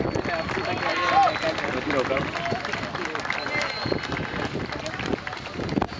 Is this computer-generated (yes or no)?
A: no